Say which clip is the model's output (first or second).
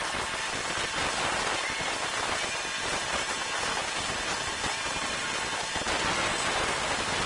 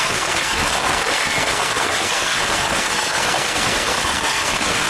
second